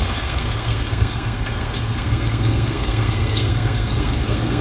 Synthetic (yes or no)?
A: yes